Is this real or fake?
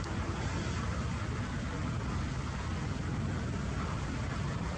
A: real